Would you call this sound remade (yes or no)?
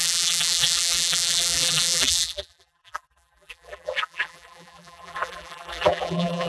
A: yes